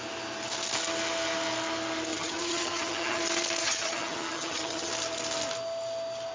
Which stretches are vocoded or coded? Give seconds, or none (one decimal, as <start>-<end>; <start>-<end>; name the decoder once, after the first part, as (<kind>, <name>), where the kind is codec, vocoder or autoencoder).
2.1-3.2 (vocoder, HiFi-GAN); 3.6-4.9